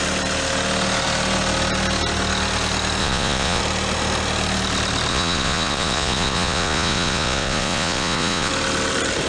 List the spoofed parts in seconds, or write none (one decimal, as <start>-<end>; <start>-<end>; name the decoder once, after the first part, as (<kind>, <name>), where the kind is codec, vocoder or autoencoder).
3.0-3.6 (vocoder, Vocos); 5.1-8.5